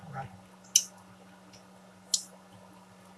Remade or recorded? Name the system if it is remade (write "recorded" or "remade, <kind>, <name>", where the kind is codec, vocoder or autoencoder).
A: recorded